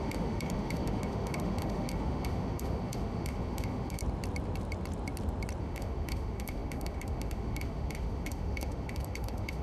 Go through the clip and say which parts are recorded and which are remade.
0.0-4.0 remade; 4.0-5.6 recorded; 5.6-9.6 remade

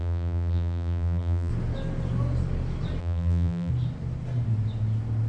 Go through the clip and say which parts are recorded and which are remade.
0.0-1.5 remade; 1.5-3.0 recorded; 3.0-3.7 remade; 3.7-5.3 recorded

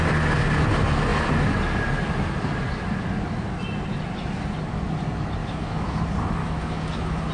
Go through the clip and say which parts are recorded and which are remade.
0.0-5.4 recorded; 5.4-6.0 remade; 6.0-6.4 recorded; 6.4-7.3 remade

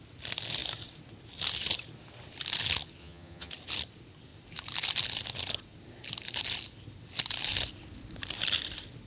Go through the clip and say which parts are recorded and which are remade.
0.0-3.0 recorded; 3.0-3.5 remade; 3.5-9.1 recorded

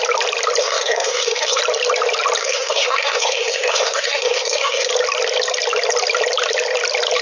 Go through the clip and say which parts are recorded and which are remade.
0.0-0.6 recorded; 0.6-1.6 remade; 1.6-2.4 recorded; 2.4-4.9 remade; 4.9-7.2 recorded

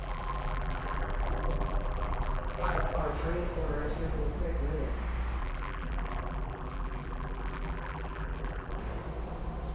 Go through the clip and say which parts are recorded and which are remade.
0.0-3.0 remade; 3.0-5.4 recorded; 5.4-8.8 remade; 8.8-9.7 recorded

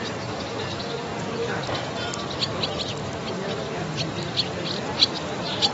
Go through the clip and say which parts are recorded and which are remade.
0.0-5.7 recorded

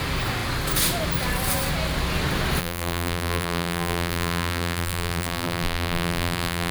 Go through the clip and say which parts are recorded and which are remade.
0.0-2.6 recorded; 2.6-6.7 remade